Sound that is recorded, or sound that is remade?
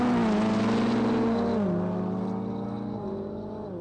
recorded